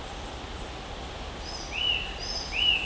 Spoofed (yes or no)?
no